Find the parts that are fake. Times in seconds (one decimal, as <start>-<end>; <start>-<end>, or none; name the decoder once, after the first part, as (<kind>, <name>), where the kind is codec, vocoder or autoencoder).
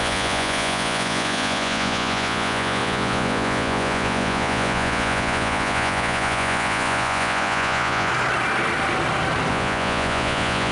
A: 0.0-8.1 (vocoder, Vocos); 9.5-10.7